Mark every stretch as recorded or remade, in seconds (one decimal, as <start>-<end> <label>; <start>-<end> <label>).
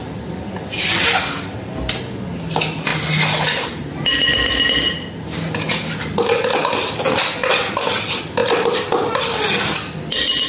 0.0-2.9 remade; 2.9-5.9 recorded; 5.9-10.5 remade